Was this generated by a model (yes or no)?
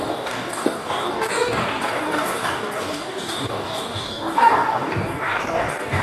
yes